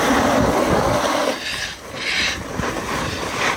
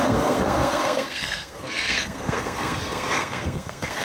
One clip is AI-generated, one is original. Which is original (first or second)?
first